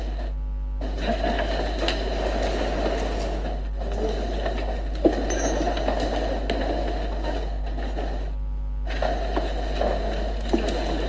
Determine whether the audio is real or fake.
real